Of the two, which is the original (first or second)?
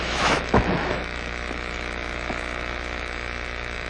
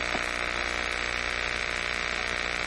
second